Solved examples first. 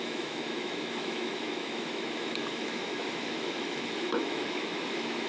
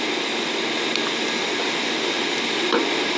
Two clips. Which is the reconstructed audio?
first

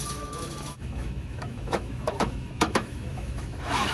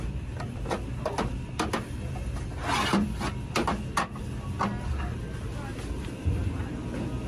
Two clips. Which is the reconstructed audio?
first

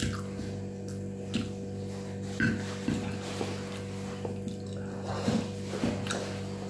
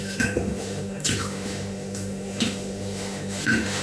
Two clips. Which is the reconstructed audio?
second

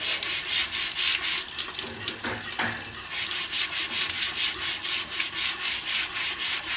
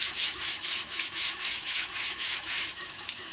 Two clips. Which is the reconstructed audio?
second